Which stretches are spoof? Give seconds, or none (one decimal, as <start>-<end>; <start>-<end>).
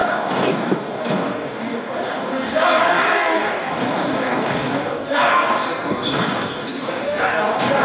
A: 0.0-7.8